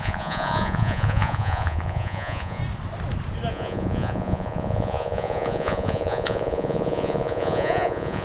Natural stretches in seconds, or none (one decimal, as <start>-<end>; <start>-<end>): 2.6-3.5